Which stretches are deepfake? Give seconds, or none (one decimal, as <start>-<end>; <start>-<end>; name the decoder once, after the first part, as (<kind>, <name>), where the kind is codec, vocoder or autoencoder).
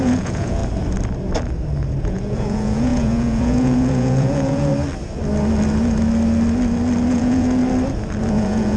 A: 0.0-0.6 (vocoder, Vocos); 2.0-4.7; 7.1-7.6; 8.3-8.8